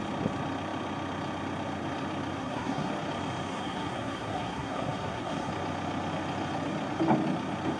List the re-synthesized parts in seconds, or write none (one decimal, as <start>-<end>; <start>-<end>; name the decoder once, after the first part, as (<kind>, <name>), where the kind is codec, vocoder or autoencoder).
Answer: 2.4-2.9 (codec, SNAC); 3.5-5.5